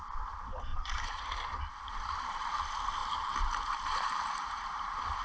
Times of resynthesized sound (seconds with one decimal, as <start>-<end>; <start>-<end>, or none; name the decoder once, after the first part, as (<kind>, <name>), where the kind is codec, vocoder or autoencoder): 0.7-1.6 (vocoder, BigVGAN v2); 3.0-5.2